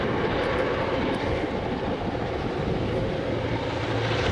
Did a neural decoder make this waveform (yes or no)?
no